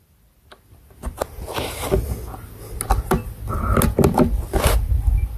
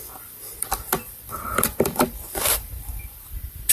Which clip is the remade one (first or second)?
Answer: second